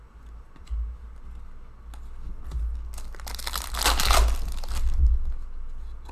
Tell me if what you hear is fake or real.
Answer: real